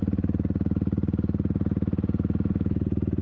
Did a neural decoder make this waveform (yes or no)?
no